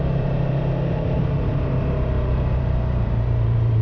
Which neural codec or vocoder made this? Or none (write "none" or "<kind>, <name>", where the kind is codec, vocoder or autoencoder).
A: vocoder, BigVGAN v2